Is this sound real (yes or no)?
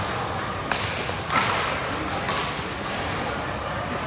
yes